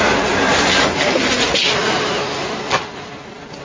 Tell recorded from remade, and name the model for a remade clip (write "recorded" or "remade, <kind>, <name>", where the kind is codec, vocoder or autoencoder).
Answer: recorded